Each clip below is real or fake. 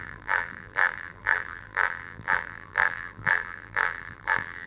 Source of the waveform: fake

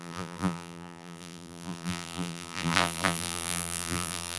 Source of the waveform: fake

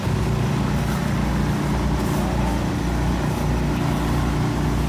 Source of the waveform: real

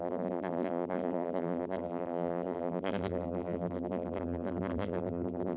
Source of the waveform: fake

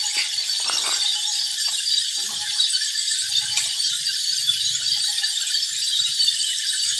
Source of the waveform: fake